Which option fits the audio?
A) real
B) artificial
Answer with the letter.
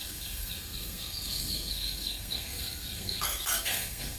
B